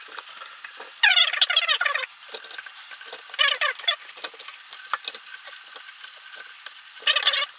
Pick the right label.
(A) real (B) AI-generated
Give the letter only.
A